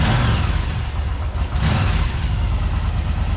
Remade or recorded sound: recorded